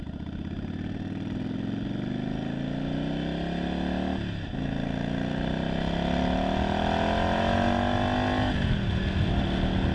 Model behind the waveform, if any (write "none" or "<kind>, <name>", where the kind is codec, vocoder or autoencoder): none